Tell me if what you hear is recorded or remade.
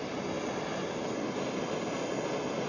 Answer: recorded